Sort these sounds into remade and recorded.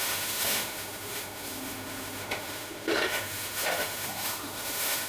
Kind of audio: remade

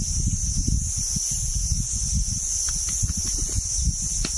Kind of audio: recorded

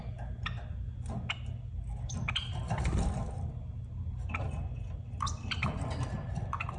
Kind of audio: recorded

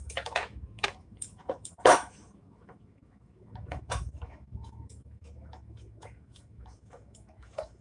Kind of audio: remade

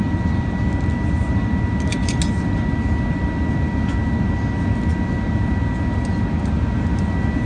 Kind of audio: recorded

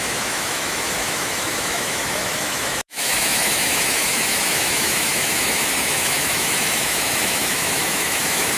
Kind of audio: remade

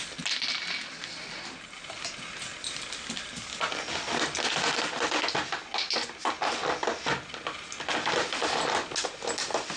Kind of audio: recorded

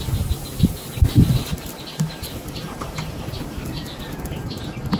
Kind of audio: recorded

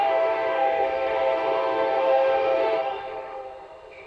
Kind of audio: remade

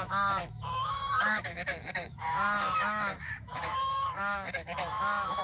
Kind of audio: remade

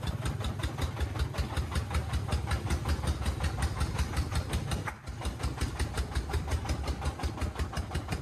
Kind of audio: recorded